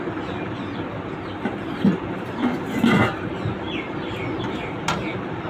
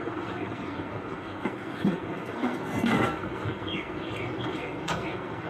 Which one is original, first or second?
first